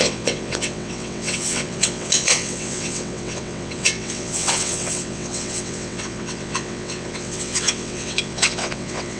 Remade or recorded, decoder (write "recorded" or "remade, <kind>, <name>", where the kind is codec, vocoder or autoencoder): remade, vocoder, WaveNeXt